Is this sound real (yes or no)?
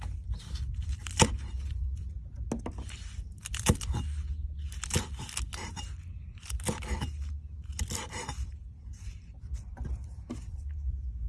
yes